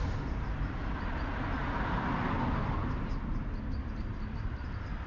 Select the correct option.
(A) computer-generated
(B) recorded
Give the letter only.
B